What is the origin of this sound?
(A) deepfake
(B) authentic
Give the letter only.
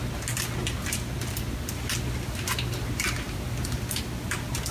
B